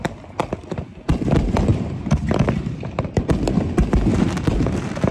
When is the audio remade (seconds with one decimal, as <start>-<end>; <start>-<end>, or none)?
1.7-3.2; 4.1-5.1